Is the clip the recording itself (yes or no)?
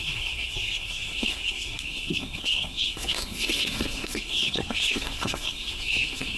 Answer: no